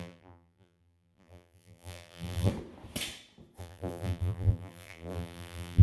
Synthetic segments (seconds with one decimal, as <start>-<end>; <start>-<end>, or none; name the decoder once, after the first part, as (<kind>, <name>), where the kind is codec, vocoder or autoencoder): 0.0-2.5 (vocoder, BigVGAN v2); 3.6-5.8